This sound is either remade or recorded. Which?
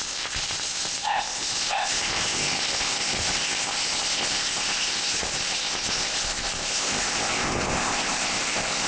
remade